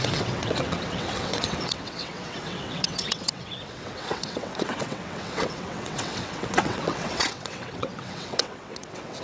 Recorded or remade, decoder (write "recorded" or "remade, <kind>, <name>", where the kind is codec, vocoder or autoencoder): remade, vocoder, WaveNeXt